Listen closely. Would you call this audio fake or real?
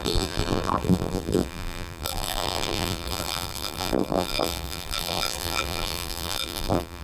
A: fake